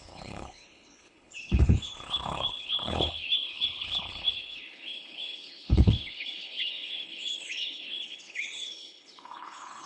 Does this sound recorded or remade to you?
remade